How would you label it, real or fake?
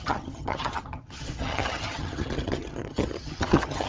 fake